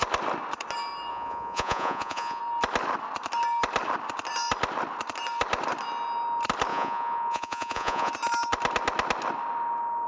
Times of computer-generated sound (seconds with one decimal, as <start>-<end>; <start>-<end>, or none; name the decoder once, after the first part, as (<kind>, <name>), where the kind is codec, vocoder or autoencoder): 1.1-2.4 (vocoder, Vocos); 6.7-8.1